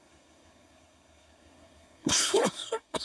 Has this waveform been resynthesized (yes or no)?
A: yes